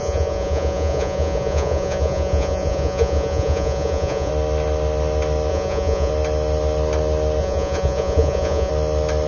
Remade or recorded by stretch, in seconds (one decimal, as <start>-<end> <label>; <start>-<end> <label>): 0.0-4.3 remade; 4.3-5.5 recorded; 5.5-6.1 remade; 6.1-7.4 recorded; 7.4-8.7 remade; 8.7-9.3 recorded